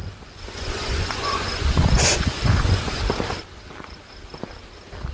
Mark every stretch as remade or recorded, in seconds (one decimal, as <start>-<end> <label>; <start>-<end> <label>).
0.0-3.0 remade; 3.0-5.1 recorded

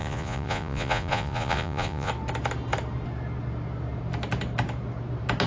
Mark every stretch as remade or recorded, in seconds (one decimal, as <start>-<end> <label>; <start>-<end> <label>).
0.0-2.1 remade; 2.1-5.5 recorded

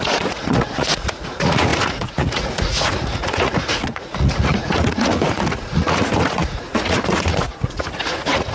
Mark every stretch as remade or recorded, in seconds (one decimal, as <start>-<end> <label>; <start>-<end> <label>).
0.0-8.5 remade

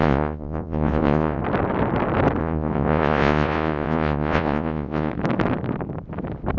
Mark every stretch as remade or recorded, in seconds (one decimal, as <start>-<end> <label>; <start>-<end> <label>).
0.0-1.4 remade; 1.4-2.4 recorded; 2.4-5.1 remade; 5.1-6.6 recorded

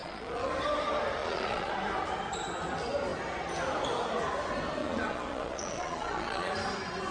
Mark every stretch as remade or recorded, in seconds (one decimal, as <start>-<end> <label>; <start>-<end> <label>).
0.0-0.5 remade; 0.5-1.2 recorded; 1.2-1.7 remade; 1.7-4.8 recorded; 4.8-6.5 remade; 6.5-7.1 recorded

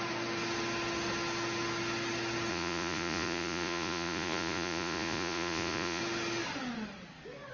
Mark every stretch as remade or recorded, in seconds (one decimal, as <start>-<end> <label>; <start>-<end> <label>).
0.0-2.5 recorded; 2.5-6.0 remade; 6.0-7.5 recorded

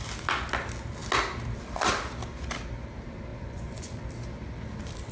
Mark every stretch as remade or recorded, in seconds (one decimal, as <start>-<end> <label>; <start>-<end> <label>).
0.0-3.3 recorded; 3.3-4.0 remade; 4.0-5.1 recorded